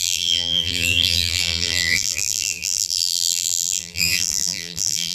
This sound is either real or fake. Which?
fake